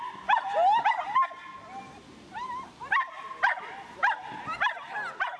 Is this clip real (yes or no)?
yes